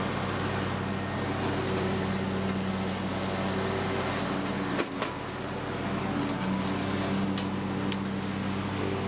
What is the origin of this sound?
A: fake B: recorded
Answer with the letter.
B